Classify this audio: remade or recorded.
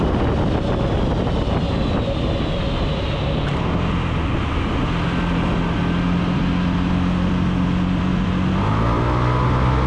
recorded